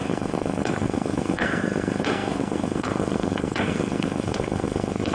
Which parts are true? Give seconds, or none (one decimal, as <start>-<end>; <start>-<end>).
none